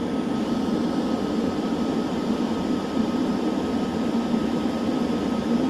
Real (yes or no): no